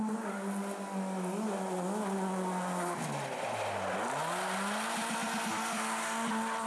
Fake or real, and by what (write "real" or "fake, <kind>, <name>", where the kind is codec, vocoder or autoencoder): real